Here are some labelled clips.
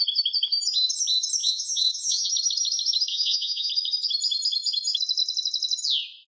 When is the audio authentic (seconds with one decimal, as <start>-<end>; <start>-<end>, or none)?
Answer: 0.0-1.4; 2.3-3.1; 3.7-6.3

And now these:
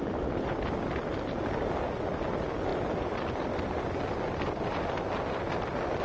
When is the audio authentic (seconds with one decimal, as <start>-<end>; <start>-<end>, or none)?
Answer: 0.0-6.0

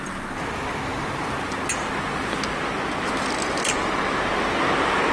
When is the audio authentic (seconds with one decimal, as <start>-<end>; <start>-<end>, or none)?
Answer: 0.0-5.1

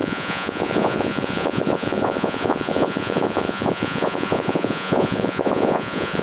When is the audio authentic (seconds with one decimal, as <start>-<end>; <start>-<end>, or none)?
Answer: none

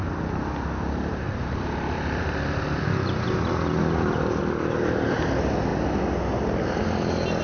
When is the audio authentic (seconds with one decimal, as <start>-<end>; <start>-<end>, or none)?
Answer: 0.0-7.4